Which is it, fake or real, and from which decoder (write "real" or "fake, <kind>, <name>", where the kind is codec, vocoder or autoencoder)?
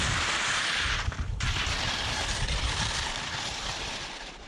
fake, vocoder, BigVGAN v2